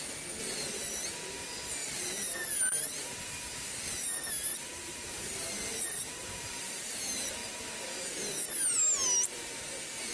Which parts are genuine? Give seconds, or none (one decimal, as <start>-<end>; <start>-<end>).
0.0-1.8; 3.8-4.5; 7.0-10.1